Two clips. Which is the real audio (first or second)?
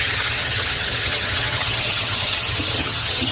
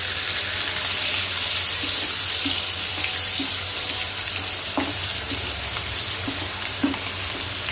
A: second